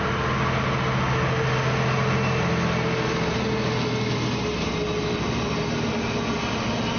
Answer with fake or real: real